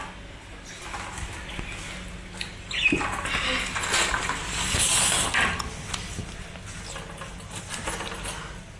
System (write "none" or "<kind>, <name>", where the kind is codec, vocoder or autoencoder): none